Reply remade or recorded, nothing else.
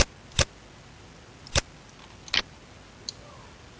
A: recorded